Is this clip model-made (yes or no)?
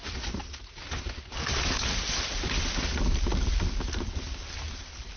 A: no